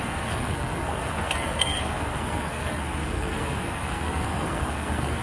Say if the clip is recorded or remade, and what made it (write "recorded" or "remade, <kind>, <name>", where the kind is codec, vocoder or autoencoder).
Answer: remade, codec, SNAC